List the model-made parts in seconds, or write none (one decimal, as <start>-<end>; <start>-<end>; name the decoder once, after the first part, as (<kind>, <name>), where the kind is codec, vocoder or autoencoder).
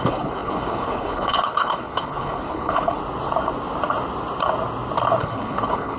0.0-3.0 (codec, HILCodec); 5.2-6.0